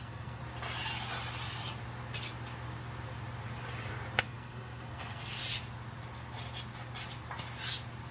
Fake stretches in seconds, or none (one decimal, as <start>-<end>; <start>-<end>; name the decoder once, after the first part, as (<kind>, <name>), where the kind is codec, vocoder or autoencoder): 0.0-0.4 (codec, SNAC); 4.2-5.4